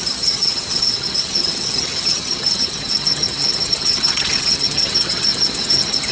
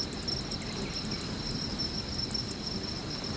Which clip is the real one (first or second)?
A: second